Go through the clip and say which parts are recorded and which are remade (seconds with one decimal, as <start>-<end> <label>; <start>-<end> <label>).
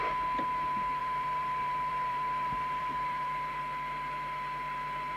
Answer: 0.0-1.0 recorded; 1.0-3.6 remade; 3.6-5.2 recorded